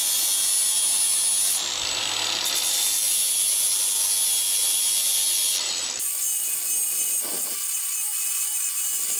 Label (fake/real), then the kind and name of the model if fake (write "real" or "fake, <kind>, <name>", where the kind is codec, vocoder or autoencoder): real